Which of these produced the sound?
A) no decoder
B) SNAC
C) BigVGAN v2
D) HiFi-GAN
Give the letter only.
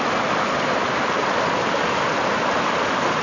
A